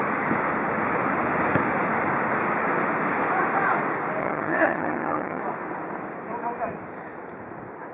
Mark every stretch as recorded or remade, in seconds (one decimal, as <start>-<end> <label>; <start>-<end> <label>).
0.0-4.2 recorded; 4.2-5.4 remade; 5.4-7.9 recorded